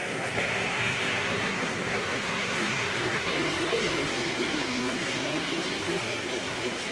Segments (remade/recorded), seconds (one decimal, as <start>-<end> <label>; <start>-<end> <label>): 0.0-6.9 remade